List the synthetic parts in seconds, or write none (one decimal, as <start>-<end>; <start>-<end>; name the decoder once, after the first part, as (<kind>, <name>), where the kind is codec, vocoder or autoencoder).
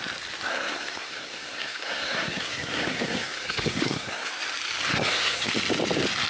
0.5-4.3 (codec, SNAC); 4.9-5.5